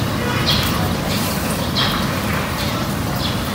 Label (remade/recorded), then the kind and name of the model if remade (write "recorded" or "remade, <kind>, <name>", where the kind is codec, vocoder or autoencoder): recorded